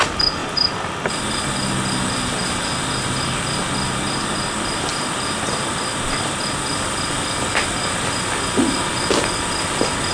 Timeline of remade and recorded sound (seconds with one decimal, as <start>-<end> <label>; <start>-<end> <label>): 0.0-0.4 recorded; 0.4-1.2 remade; 1.2-4.9 recorded; 4.9-6.5 remade; 6.5-10.1 recorded